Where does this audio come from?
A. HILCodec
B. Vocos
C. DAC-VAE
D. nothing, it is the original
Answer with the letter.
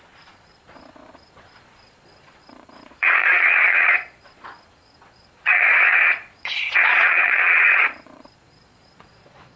B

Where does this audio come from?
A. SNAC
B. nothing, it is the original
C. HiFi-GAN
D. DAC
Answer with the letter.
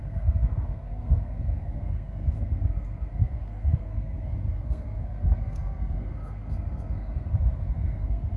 A